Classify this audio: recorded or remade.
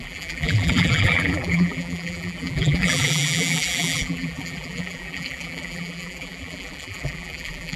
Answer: remade